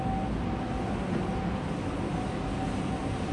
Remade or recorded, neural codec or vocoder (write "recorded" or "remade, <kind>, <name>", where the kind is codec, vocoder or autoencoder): recorded